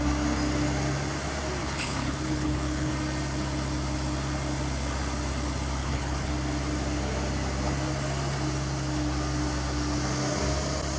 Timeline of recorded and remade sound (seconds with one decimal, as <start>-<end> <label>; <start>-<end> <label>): 0.0-1.6 recorded; 1.6-2.9 remade; 2.9-5.8 recorded; 5.8-6.3 remade; 6.3-11.0 recorded